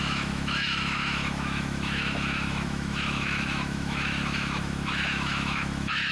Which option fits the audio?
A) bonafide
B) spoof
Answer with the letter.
B